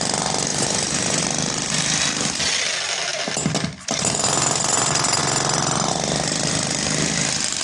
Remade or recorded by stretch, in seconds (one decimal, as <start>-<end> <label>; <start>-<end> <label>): 0.0-0.5 recorded; 0.5-1.2 remade; 1.2-7.6 recorded